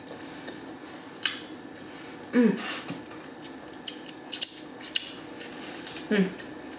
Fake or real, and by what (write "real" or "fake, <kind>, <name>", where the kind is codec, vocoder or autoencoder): real